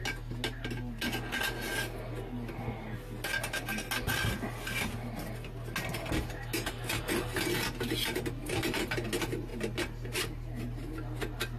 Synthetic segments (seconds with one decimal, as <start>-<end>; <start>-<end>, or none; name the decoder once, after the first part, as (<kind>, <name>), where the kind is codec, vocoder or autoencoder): 8.4-8.9 (vocoder, BigVGAN v2)